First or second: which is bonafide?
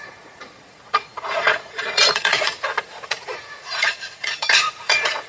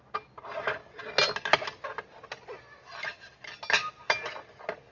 second